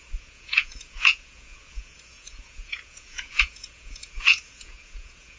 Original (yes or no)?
no